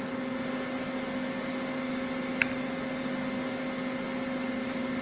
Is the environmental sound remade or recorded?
recorded